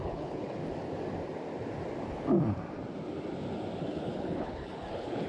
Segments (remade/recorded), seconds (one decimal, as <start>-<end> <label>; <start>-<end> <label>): 0.0-0.6 remade; 0.6-3.8 recorded; 3.8-5.3 remade